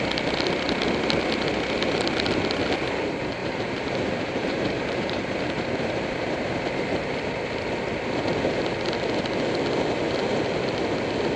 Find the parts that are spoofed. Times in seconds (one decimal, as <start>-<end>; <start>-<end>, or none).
3.4-6.5